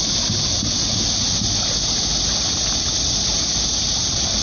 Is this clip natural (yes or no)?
yes